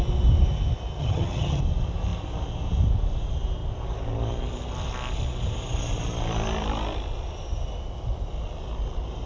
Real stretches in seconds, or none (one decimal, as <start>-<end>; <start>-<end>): 0.0-1.0; 1.6-9.3